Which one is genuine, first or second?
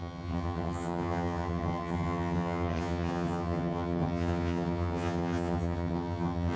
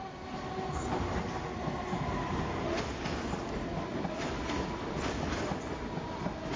second